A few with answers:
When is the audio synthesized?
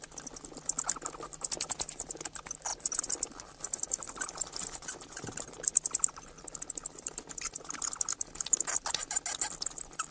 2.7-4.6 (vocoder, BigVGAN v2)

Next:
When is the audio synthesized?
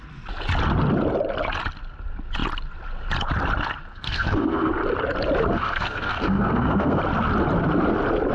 3.9-4.7 (codec, SNAC); 5.5-7.0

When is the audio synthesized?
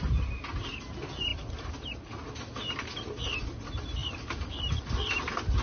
none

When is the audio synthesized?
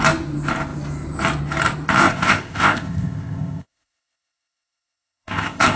2.0-5.8 (codec, ZipCodec)